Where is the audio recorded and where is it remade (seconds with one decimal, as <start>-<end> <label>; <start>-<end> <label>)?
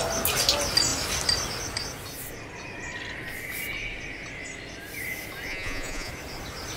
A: 0.0-5.5 recorded; 5.5-6.1 remade; 6.1-6.8 recorded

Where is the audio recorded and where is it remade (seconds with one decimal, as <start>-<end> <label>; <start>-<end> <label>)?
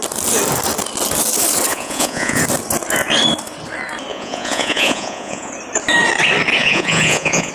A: 0.0-1.7 recorded; 1.7-2.4 remade; 2.4-4.1 recorded; 4.1-5.5 remade; 5.5-6.6 recorded; 6.6-7.5 remade